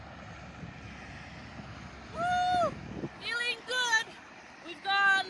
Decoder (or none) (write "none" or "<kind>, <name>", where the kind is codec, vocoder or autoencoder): none